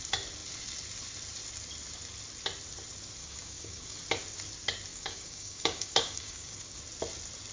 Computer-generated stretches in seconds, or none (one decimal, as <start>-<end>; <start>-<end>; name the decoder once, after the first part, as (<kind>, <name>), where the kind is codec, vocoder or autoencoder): 3.2-4.0 (codec, DAC); 4.9-6.8